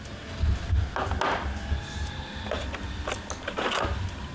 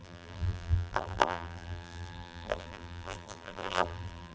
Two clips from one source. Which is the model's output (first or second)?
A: second